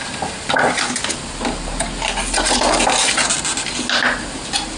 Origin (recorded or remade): recorded